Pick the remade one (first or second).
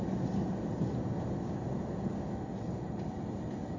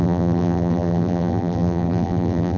second